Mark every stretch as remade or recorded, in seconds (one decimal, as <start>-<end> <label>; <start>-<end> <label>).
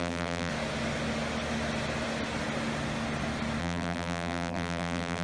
0.0-0.5 remade; 0.5-3.6 recorded; 3.6-5.2 remade